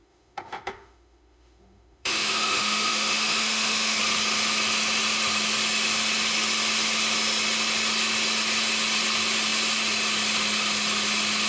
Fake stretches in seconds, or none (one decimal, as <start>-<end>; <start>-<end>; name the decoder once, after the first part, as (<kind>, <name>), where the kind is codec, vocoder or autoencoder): 0.0-4.0 (autoencoder, DAC-VAE)